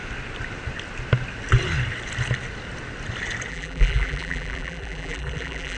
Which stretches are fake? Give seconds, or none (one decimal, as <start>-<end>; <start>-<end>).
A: 3.5-5.8